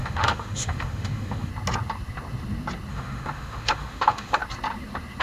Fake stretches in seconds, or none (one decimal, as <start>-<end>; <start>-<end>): 0.0-1.5; 2.9-4.4